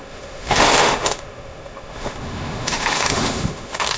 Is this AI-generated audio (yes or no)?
yes